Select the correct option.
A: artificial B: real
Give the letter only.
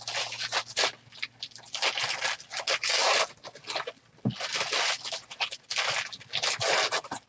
B